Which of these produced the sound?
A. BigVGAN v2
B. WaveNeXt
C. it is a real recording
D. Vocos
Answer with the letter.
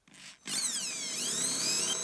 C